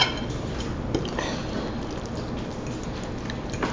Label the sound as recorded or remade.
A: recorded